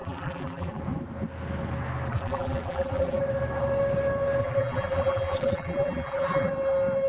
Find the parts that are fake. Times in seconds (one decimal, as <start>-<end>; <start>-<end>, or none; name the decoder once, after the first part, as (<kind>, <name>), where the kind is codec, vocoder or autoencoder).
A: 0.0-0.8 (vocoder, BigVGAN v2); 2.1-3.2; 4.4-6.5